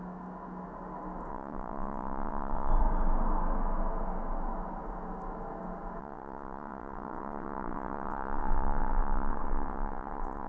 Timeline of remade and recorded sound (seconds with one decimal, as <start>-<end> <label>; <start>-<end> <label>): 0.0-1.3 recorded; 1.3-2.7 remade; 2.7-6.0 recorded; 6.0-10.5 remade